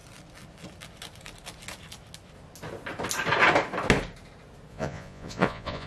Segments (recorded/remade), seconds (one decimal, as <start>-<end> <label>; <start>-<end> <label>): 0.0-4.7 recorded; 4.7-5.9 remade